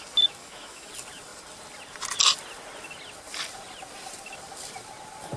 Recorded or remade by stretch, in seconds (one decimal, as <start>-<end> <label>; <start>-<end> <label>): 0.0-0.4 recorded; 0.4-0.9 remade; 0.9-5.4 recorded